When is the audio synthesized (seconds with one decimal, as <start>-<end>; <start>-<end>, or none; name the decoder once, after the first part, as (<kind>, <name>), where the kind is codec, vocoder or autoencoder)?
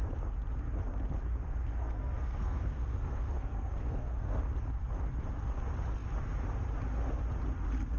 1.8-4.4 (codec, SNAC)